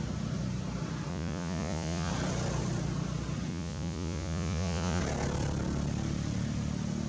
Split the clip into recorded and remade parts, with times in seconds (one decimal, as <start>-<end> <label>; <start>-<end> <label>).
0.0-1.1 recorded; 1.1-2.1 remade; 2.1-3.5 recorded; 3.5-5.0 remade; 5.0-7.1 recorded